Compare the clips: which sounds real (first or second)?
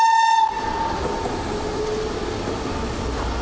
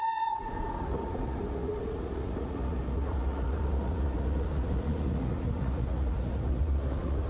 first